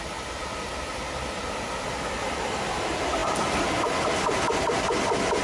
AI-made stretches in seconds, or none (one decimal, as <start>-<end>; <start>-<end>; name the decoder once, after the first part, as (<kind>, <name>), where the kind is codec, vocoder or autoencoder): none